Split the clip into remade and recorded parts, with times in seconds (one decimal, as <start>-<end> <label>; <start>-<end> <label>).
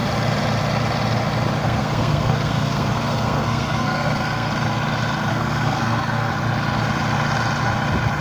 0.0-1.6 recorded; 1.6-4.5 remade; 4.5-5.3 recorded; 5.3-6.3 remade; 6.3-8.2 recorded